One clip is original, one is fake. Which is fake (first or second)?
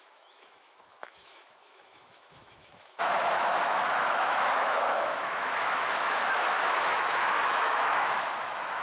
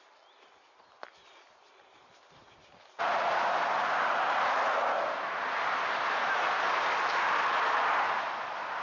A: first